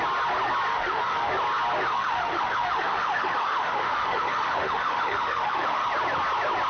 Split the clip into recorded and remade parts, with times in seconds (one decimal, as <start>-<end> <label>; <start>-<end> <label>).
0.0-0.7 recorded; 0.7-1.3 remade; 1.3-1.9 recorded; 1.9-5.9 remade; 5.9-6.7 recorded